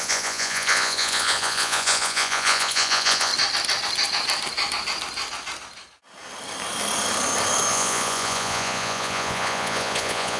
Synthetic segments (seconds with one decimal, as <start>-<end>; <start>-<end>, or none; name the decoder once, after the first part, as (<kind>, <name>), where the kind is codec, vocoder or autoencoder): 0.0-3.3 (vocoder, Vocos); 7.7-10.4